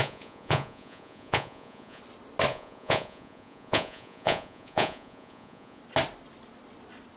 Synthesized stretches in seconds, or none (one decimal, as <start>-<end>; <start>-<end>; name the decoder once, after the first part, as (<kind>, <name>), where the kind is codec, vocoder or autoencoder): 0.0-2.0 (vocoder, Vocos); 2.5-5.8